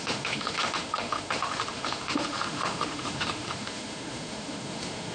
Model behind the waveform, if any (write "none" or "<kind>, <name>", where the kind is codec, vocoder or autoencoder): autoencoder, DAC-VAE